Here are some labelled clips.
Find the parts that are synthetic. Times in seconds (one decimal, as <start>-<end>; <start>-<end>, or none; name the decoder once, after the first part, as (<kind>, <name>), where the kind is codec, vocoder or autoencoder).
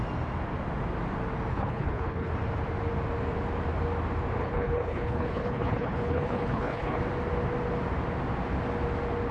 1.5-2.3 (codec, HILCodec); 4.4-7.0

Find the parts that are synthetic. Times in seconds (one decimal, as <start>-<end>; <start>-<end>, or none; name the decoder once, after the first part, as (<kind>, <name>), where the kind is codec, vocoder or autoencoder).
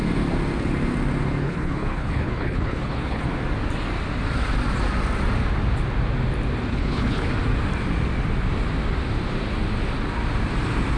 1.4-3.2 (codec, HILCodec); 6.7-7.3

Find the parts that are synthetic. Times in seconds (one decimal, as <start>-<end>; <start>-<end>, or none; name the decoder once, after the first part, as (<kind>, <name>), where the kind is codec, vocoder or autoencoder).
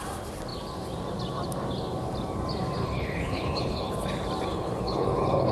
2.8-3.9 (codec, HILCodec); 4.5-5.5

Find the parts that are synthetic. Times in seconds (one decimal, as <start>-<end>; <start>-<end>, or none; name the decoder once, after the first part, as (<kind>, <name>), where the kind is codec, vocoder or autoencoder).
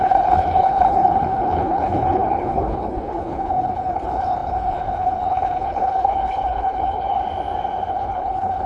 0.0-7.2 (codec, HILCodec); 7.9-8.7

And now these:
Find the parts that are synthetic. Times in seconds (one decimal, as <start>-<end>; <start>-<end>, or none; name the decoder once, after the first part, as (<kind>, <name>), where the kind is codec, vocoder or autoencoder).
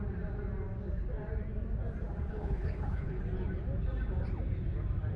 2.3-3.2 (codec, HILCodec)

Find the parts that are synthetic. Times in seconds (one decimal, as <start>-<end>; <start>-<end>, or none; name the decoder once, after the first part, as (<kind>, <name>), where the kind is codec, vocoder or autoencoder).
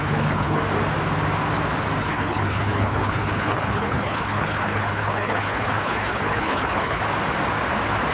0.0-0.6 (codec, HILCodec); 2.0-7.0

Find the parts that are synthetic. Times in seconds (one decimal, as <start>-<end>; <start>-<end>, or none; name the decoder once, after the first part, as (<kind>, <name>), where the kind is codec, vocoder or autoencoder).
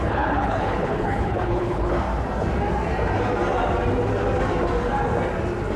0.0-1.9 (codec, HILCodec)